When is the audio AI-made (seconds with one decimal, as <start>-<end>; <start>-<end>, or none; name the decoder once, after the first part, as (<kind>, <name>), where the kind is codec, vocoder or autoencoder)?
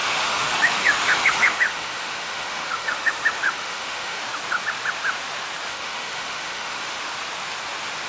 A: 0.0-4.2 (autoencoder, DAC-VAE); 5.7-7.0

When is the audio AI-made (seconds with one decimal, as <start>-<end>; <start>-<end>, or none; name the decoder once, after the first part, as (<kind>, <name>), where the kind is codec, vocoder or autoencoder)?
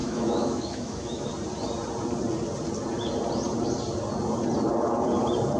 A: 0.0-1.3 (autoencoder, DAC-VAE)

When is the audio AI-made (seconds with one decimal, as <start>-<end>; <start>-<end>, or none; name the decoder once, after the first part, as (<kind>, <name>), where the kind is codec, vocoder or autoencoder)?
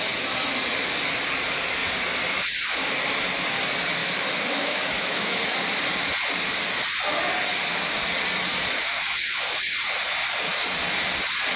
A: 4.0-5.8 (autoencoder, DAC-VAE); 8.8-9.6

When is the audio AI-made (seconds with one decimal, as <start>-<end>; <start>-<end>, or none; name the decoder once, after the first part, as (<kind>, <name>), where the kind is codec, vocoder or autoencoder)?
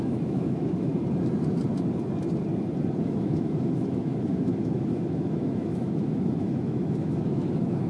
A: 0.0-0.9 (autoencoder, DAC-VAE); 3.0-7.9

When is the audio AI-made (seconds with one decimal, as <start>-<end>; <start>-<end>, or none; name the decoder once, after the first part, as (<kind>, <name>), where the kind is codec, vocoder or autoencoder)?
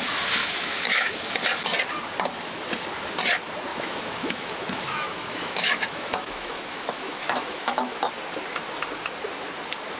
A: 0.4-1.3 (autoencoder, DAC-VAE); 3.7-8.1